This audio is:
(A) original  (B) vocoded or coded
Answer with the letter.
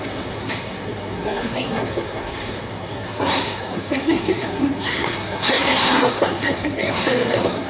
B